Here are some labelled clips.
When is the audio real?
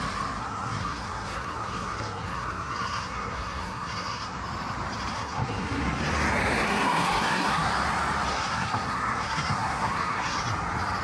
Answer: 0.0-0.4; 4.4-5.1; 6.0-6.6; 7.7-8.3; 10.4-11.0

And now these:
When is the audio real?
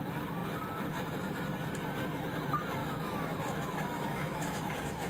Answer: 0.0-2.8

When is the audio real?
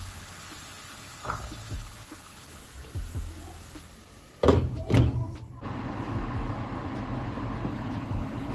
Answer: 2.6-7.7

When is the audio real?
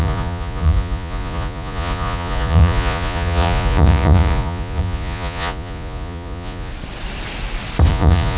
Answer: 6.7-7.9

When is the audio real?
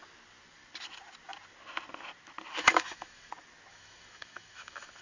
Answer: 0.0-2.6; 3.3-3.7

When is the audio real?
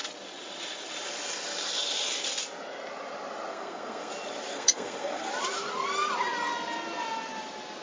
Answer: 0.0-3.5; 4.1-4.5; 5.3-7.8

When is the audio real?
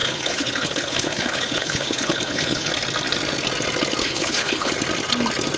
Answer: 2.7-4.0; 4.7-5.6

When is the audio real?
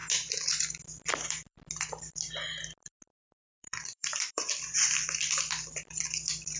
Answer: 0.0-3.1; 6.0-6.6